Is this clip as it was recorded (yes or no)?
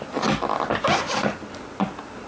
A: yes